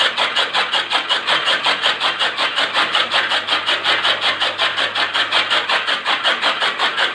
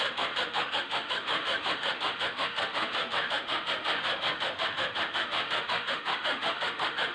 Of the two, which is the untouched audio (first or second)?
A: first